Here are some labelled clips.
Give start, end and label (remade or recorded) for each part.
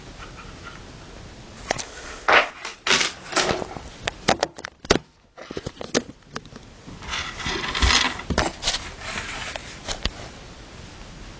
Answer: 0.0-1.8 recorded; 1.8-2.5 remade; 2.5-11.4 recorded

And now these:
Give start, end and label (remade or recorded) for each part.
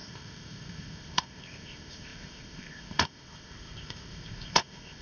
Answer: 0.0-5.0 remade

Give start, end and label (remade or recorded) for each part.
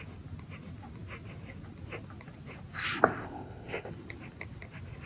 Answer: 0.0-3.1 recorded; 3.1-3.9 remade; 3.9-5.1 recorded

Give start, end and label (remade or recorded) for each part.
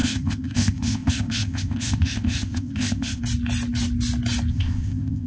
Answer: 0.0-3.2 remade; 3.2-4.5 recorded; 4.5-5.3 remade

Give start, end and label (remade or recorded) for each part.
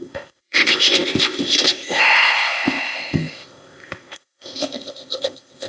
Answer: 0.0-5.7 remade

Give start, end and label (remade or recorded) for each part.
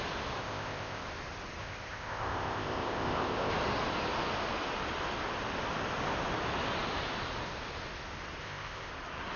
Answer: 0.0-0.4 recorded; 0.4-1.0 remade; 1.0-1.6 recorded; 1.6-3.5 remade; 3.5-8.4 recorded; 8.4-8.9 remade; 8.9-9.4 recorded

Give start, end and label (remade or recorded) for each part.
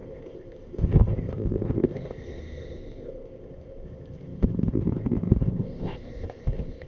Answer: 0.0-6.9 remade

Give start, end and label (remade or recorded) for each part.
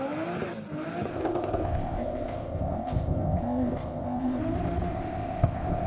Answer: 0.0-1.1 recorded; 1.1-4.4 remade; 4.4-4.9 recorded; 4.9-5.9 remade